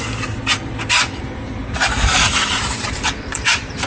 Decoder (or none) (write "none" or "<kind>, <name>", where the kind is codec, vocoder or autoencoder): vocoder, BigVGAN v2